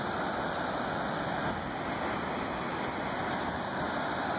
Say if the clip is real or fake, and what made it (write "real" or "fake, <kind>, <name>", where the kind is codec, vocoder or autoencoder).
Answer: real